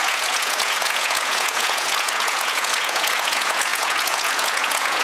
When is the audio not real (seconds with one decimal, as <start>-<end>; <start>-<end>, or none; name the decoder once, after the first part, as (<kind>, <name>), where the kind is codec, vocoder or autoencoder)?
0.0-5.0 (vocoder, Vocos)